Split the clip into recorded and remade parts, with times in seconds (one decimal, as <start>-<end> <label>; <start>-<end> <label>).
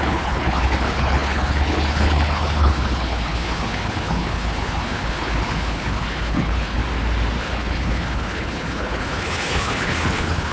0.0-6.8 remade; 6.8-7.4 recorded; 7.4-10.5 remade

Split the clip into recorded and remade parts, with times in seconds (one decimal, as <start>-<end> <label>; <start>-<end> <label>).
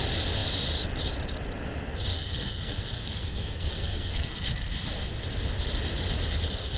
0.0-2.1 recorded; 2.1-4.5 remade; 4.5-6.8 recorded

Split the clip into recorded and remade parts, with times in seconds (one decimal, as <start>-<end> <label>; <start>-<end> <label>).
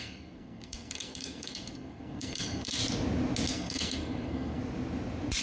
0.0-2.8 remade; 2.8-3.5 recorded; 3.5-4.6 remade; 4.6-5.4 recorded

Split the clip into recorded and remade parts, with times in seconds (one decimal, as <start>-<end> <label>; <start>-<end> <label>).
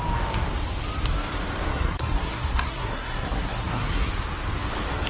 0.0-1.7 recorded; 1.7-4.1 remade; 4.1-5.1 recorded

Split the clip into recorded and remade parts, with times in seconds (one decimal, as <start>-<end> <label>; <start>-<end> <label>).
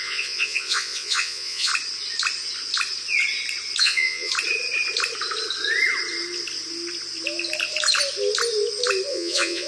0.0-1.7 remade; 1.7-3.8 recorded; 3.8-4.3 remade; 4.3-9.1 recorded; 9.1-9.7 remade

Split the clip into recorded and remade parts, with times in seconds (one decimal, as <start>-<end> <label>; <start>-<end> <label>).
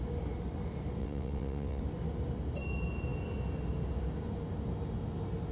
0.0-1.0 recorded; 1.0-1.8 remade; 1.8-5.5 recorded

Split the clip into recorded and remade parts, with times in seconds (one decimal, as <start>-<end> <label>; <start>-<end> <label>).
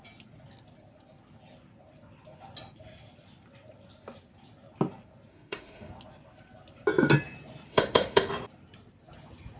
0.0-5.3 recorded; 5.3-5.9 remade; 5.9-7.7 recorded; 7.7-8.3 remade; 8.3-9.6 recorded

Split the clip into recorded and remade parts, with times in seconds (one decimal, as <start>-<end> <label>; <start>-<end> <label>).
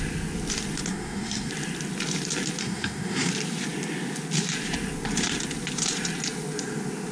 0.0-0.9 recorded; 0.9-1.5 remade; 1.5-2.6 recorded; 2.6-3.3 remade; 3.3-7.1 recorded